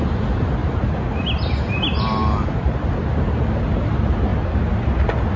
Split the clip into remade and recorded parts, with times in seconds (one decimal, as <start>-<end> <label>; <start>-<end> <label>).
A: 0.0-0.6 recorded; 0.6-1.6 remade; 1.6-2.2 recorded; 2.2-3.2 remade; 3.2-4.3 recorded; 4.3-4.8 remade; 4.8-5.4 recorded